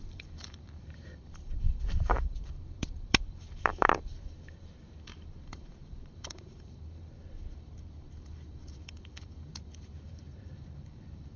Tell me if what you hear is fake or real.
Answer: fake